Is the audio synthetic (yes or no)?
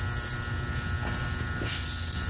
no